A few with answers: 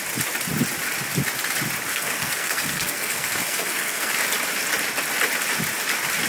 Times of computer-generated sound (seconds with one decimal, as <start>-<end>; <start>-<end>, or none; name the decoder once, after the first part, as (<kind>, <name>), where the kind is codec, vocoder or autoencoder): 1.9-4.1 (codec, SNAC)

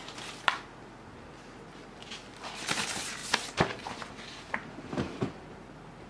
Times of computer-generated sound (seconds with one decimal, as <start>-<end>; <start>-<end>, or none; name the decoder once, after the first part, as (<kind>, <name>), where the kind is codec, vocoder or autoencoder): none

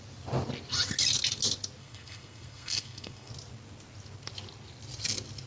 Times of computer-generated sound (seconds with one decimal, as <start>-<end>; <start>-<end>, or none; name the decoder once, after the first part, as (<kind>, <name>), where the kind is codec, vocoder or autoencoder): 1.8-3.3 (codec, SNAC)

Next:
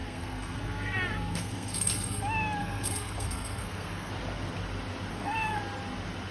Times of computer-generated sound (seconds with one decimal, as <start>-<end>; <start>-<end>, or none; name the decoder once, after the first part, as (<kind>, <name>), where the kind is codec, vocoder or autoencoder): 0.0-2.2 (codec, SNAC); 2.6-4.1; 5.1-5.6